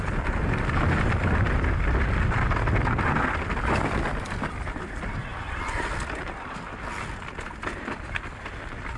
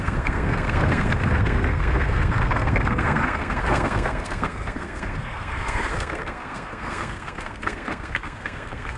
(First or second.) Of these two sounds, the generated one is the second